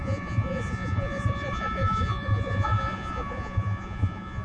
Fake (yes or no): yes